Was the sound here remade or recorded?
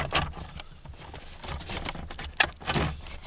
recorded